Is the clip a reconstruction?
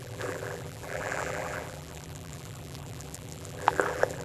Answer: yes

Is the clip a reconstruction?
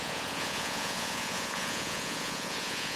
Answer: yes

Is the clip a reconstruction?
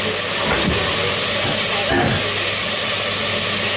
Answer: no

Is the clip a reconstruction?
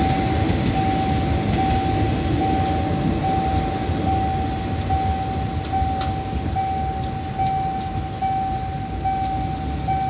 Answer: no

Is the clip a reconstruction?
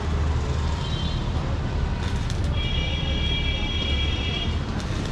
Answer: yes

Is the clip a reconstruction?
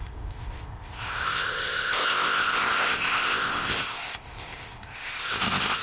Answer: yes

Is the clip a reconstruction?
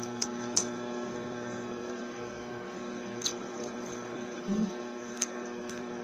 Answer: yes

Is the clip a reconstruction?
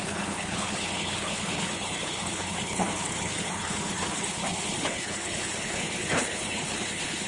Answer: yes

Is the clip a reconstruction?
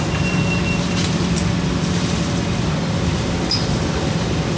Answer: no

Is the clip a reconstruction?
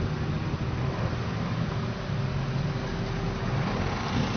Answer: no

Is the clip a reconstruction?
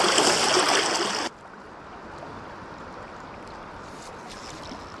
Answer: no